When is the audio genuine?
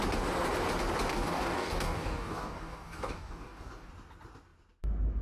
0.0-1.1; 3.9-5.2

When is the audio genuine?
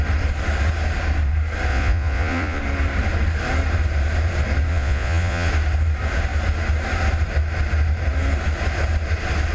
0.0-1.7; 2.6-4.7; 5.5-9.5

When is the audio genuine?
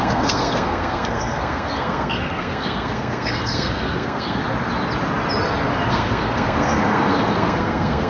4.4-5.9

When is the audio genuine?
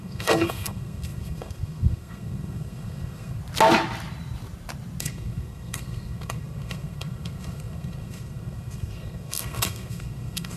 3.4-5.0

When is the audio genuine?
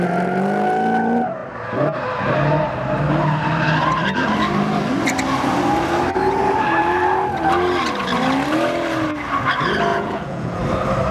0.0-9.9; 10.6-11.1